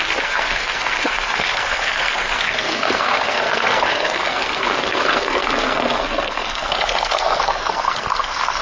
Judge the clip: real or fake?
fake